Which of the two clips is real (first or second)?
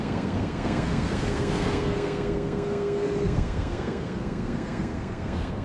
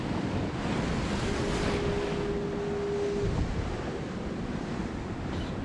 second